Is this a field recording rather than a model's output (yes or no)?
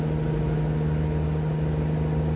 yes